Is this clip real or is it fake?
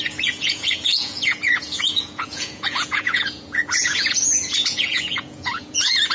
fake